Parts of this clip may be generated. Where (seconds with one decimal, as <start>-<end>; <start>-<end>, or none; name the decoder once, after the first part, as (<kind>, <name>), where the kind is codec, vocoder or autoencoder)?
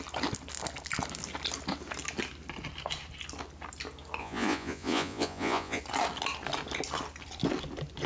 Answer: 4.2-5.8 (vocoder, Vocos)